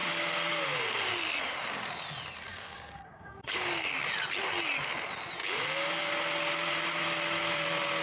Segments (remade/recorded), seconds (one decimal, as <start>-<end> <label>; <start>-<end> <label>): 0.0-0.8 remade; 0.8-2.5 recorded; 2.5-3.9 remade; 3.9-5.4 recorded; 5.4-6.1 remade; 6.1-8.0 recorded